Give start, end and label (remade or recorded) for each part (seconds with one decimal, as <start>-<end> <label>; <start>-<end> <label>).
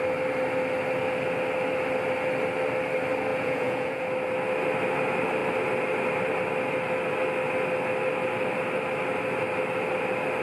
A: 0.0-3.3 recorded; 3.3-4.0 remade; 4.0-10.4 recorded